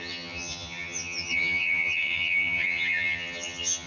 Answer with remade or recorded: remade